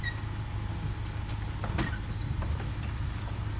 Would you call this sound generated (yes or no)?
no